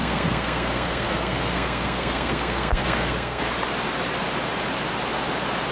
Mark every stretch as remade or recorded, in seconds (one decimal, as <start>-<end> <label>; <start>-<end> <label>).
0.0-3.4 remade; 3.4-5.7 recorded